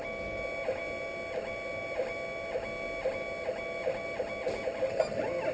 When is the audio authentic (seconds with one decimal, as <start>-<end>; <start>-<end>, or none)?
0.0-5.5

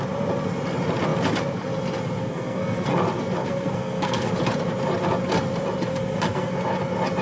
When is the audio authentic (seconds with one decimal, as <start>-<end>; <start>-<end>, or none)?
0.0-2.2; 3.0-3.4; 4.3-5.9; 6.6-7.2

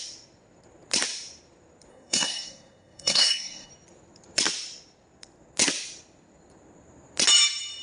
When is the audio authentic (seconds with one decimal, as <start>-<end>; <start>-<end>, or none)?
0.0-1.9; 3.7-7.8

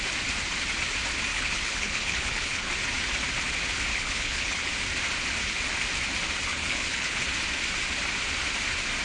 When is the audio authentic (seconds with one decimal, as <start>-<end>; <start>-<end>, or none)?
0.0-1.3; 2.7-3.9; 4.7-6.5; 7.2-9.0

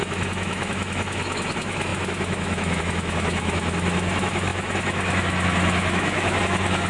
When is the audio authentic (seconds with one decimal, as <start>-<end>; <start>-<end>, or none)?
none

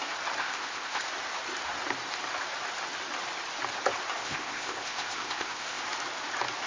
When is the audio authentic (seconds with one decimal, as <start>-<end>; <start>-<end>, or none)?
0.0-0.4; 1.0-4.2; 5.8-6.7